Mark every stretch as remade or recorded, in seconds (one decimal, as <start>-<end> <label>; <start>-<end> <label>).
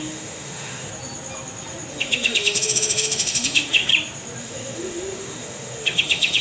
0.0-0.9 remade; 0.9-1.9 recorded; 1.9-3.9 remade; 3.9-4.4 recorded; 4.4-6.4 remade